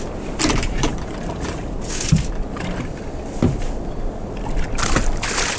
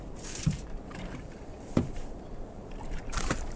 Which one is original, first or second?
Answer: first